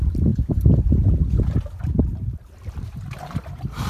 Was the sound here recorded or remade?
recorded